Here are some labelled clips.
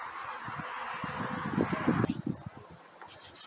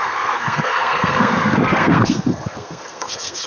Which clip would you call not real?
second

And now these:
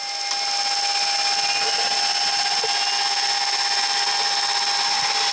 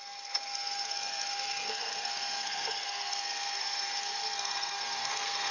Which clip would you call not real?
second